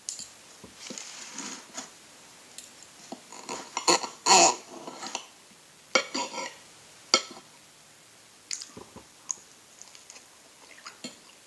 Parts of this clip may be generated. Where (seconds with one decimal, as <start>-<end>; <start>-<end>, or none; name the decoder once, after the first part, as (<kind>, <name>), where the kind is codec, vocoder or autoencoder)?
none